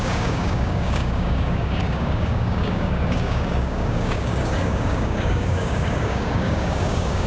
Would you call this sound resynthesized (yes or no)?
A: yes